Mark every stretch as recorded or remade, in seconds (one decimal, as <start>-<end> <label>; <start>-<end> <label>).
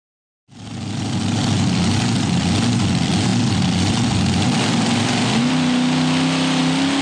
0.0-7.0 recorded